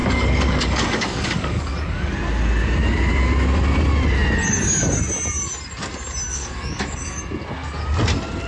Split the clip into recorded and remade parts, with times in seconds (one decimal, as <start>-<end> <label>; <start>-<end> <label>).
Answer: 0.0-2.1 remade; 2.1-6.3 recorded; 6.3-7.2 remade; 7.2-8.5 recorded